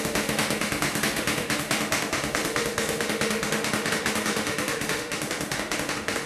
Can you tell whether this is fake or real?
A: fake